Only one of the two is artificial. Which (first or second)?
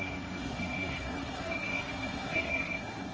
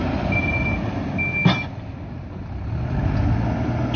first